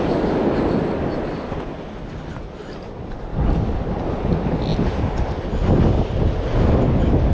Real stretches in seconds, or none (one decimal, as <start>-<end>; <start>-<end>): 0.0-3.3; 3.9-7.3